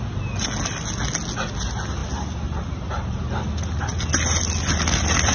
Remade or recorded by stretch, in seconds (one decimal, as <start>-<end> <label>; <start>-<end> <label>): 0.0-5.3 recorded